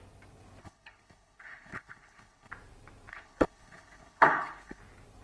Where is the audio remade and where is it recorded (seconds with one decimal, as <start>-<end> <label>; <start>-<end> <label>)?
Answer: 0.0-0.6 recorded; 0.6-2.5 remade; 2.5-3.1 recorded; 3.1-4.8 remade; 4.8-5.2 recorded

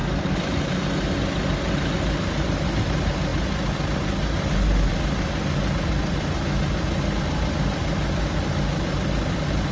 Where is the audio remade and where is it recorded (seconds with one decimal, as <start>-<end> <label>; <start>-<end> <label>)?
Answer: 0.0-9.7 recorded

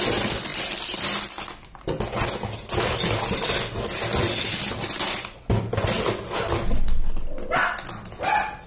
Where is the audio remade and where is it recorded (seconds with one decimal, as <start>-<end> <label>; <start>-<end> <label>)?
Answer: 0.0-8.7 recorded

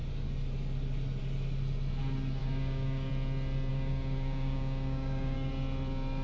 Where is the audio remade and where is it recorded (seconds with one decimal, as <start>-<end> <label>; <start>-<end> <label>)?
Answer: 0.0-2.4 recorded; 2.4-3.1 remade; 3.1-3.7 recorded; 3.7-5.5 remade; 5.5-6.2 recorded

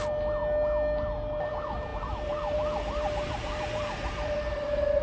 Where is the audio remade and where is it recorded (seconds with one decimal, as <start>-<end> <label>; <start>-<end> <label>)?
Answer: 0.0-1.9 recorded; 1.9-5.0 remade

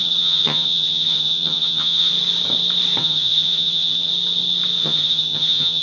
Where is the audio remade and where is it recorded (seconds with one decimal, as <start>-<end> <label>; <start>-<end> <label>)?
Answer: 0.0-2.1 remade; 2.1-3.0 recorded; 3.0-4.1 remade; 4.1-4.8 recorded; 4.8-5.8 remade